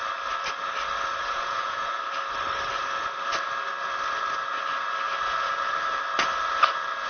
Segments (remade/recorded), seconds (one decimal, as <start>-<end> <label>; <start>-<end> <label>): 0.0-1.2 recorded; 1.2-2.0 remade; 2.0-7.1 recorded